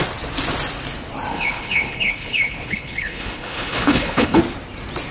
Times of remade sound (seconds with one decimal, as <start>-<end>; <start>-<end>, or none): 1.3-4.4